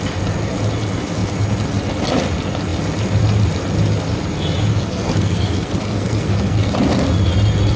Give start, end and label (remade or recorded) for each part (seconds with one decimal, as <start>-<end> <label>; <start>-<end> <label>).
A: 0.0-4.7 recorded; 4.7-6.7 remade; 6.7-7.8 recorded